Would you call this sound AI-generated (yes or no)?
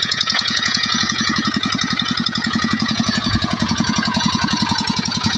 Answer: yes